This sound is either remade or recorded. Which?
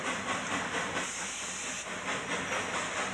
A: recorded